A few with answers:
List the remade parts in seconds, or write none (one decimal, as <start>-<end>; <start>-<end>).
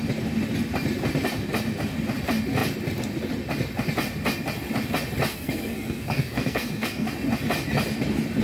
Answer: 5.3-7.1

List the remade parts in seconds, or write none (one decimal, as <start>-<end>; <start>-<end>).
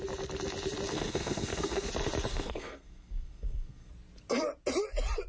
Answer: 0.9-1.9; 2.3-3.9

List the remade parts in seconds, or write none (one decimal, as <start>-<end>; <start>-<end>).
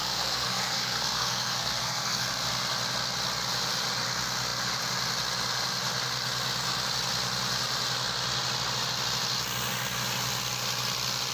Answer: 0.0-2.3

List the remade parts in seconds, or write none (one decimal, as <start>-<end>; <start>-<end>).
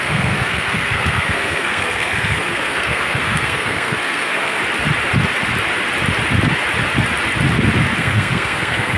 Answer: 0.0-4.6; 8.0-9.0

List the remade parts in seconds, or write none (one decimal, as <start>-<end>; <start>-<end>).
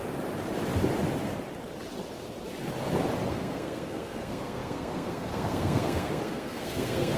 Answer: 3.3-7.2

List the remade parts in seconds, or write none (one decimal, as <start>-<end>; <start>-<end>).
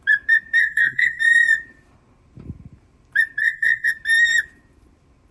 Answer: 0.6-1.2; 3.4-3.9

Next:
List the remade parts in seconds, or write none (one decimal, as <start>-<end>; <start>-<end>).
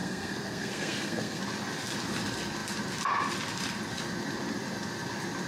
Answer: 0.0-1.4